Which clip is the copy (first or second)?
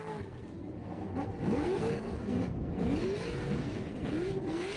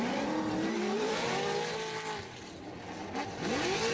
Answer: first